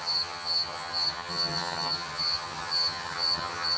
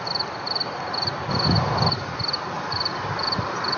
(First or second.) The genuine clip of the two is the second